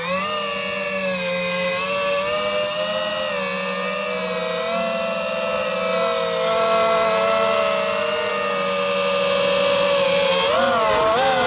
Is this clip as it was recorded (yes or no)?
yes